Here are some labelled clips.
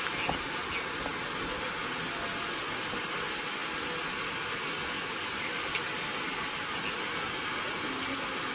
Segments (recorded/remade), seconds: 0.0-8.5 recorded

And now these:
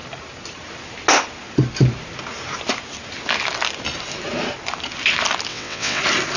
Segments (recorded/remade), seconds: 0.0-5.5 recorded; 5.5-6.0 remade; 6.0-6.4 recorded

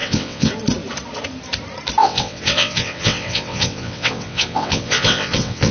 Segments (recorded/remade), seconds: 0.0-0.5 remade; 0.5-2.0 recorded; 2.0-5.7 remade

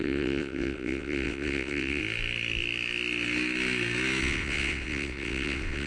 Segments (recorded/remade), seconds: 0.0-2.0 remade; 2.0-4.2 recorded; 4.2-5.9 remade

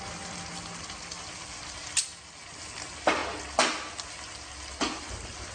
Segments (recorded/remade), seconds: 0.0-5.5 recorded

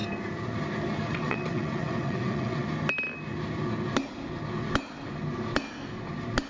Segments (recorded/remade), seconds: 0.0-1.1 recorded; 1.1-2.6 remade; 2.6-6.5 recorded